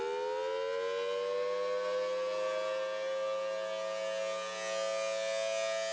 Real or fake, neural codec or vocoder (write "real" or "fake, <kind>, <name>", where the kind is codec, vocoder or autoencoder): real